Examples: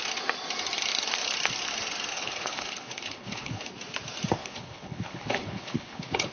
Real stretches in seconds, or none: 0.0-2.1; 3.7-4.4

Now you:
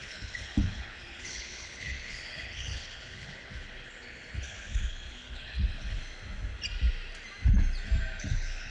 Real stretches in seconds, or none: 6.0-8.2

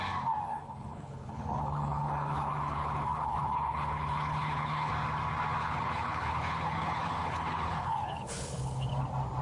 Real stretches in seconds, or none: 0.0-0.5; 4.9-5.6; 8.9-9.4

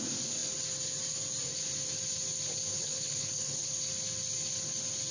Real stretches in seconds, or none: 0.0-2.7; 3.7-5.1

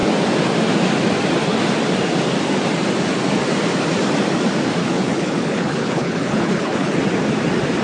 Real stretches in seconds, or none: 0.0-4.8; 7.0-7.8

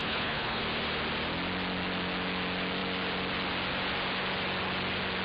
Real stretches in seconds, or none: 0.6-5.2

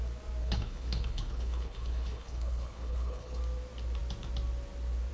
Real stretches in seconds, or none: 0.0-0.4; 3.4-5.1

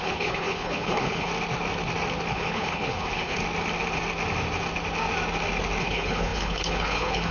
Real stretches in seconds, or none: 1.3-2.3; 3.4-5.8